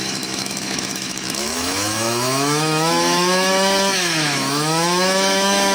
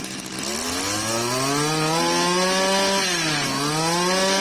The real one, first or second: second